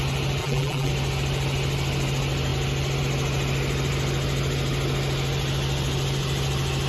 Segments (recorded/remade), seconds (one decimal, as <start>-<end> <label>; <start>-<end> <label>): 0.0-0.4 recorded; 0.4-0.9 remade; 0.9-6.9 recorded